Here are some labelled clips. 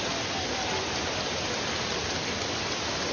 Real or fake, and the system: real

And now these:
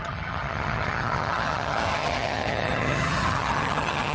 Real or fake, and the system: fake, vocoder, HiFi-GAN